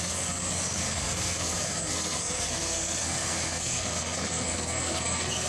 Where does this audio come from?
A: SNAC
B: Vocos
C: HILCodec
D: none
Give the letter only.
A